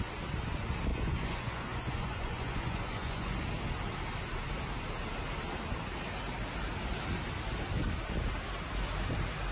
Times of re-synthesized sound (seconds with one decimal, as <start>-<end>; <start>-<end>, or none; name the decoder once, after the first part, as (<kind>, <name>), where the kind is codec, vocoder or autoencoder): 0.9-3.4 (vocoder, Vocos)